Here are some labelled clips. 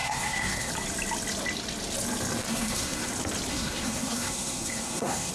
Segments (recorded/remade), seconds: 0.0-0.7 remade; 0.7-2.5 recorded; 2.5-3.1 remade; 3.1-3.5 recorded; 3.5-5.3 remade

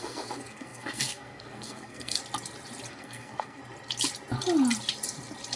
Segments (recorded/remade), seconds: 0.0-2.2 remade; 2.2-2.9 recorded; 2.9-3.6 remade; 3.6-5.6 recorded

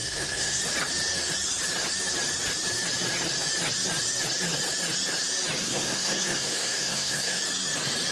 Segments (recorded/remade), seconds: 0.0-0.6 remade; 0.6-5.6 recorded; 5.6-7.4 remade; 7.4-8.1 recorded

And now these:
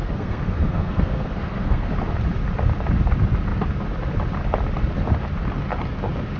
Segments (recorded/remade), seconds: 0.0-1.9 remade; 1.9-6.4 recorded

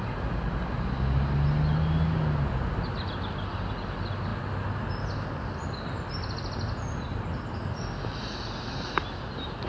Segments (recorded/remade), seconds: 0.0-9.7 recorded

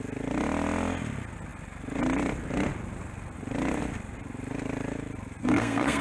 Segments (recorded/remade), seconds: 0.0-5.4 recorded; 5.4-6.0 remade

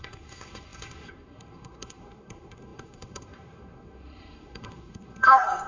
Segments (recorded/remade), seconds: 0.0-5.7 remade